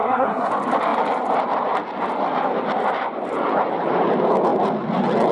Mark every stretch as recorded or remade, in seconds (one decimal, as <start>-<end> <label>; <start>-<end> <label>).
0.0-0.5 remade; 0.5-5.3 recorded